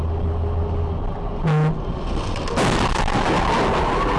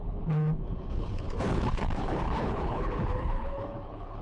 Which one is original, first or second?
first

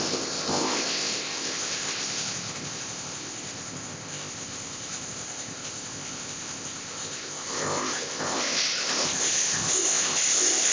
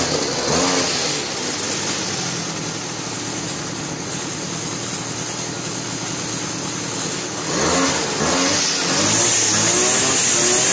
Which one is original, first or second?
second